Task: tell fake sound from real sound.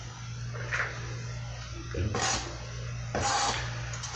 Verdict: real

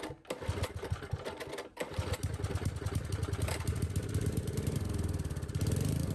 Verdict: real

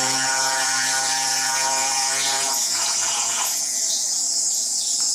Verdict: fake